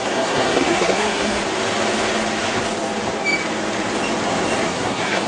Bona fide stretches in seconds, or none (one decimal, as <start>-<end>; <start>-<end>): 1.4-4.6